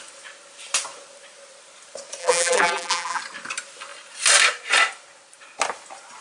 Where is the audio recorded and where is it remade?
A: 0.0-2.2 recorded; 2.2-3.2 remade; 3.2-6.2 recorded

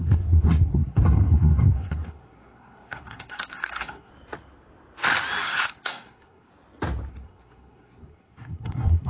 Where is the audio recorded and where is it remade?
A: 0.0-4.1 remade; 4.1-5.4 recorded; 5.4-6.5 remade; 6.5-7.1 recorded; 7.1-9.1 remade

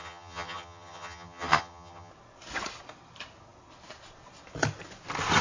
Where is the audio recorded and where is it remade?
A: 0.0-2.1 remade; 2.1-5.4 recorded

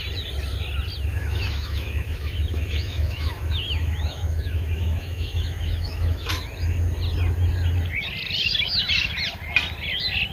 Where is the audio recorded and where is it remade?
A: 0.0-1.1 recorded; 1.1-6.3 remade; 6.3-10.3 recorded